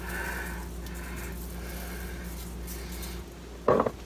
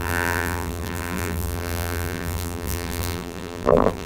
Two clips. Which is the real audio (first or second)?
first